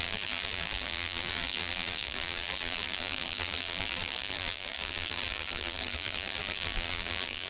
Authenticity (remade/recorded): remade